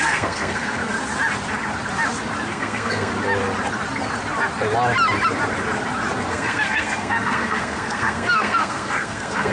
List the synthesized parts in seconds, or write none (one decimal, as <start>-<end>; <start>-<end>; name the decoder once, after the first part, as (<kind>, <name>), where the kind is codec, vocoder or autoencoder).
0.0-0.8 (codec, SNAC); 2.5-3.1; 6.3-9.5